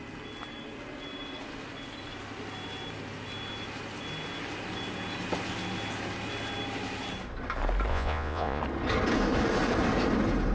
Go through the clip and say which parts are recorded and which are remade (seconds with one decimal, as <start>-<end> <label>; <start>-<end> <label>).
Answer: 0.0-7.9 recorded; 7.9-8.6 remade; 8.6-10.5 recorded

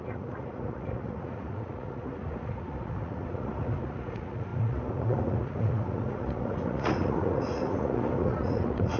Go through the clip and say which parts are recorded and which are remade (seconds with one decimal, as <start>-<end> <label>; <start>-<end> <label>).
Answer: 0.0-9.0 remade

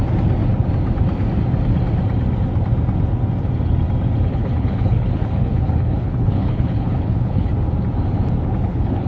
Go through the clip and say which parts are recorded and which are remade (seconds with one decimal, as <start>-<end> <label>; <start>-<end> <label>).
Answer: 0.0-4.3 recorded; 4.3-7.5 remade; 7.5-8.6 recorded; 8.6-9.1 remade

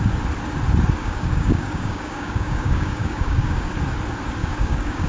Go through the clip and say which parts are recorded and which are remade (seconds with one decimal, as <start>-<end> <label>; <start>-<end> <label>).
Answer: 0.0-1.0 recorded; 1.0-3.7 remade; 3.7-4.4 recorded; 4.4-5.1 remade